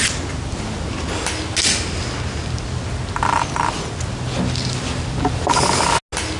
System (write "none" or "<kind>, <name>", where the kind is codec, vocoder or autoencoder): none